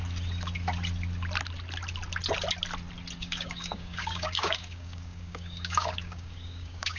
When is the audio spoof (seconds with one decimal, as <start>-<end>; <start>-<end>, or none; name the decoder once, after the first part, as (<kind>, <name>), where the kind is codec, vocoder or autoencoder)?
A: 3.2-7.0 (codec, DAC)